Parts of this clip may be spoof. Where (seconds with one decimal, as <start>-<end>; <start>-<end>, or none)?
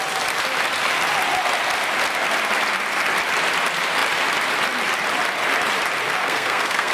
6.2-6.9